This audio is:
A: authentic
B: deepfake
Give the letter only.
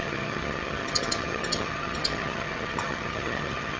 B